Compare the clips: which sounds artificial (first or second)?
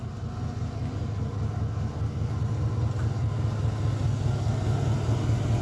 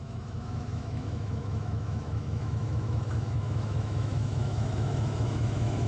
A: second